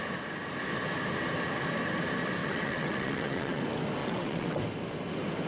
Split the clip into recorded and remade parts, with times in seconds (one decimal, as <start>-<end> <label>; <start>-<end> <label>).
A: 0.0-2.4 recorded; 2.4-3.6 remade; 3.6-4.0 recorded; 4.0-4.6 remade; 4.6-5.5 recorded